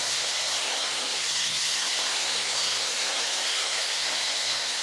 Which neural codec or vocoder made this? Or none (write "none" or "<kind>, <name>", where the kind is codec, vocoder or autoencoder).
codec, SNAC